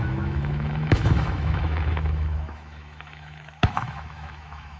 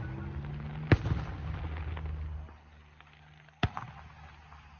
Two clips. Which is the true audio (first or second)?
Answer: second